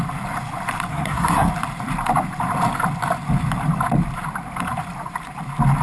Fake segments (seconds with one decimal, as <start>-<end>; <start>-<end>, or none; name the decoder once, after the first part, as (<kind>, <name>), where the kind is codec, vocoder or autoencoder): 0.9-1.5 (codec, SNAC)